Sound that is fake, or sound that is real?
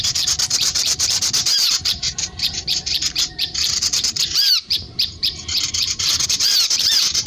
fake